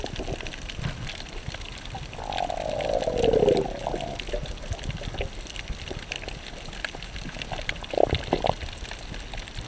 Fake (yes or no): no